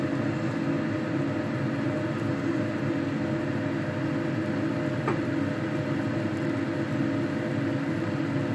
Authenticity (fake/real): real